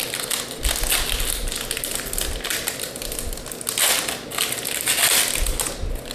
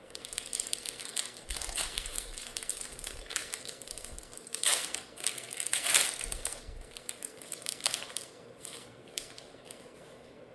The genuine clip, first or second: first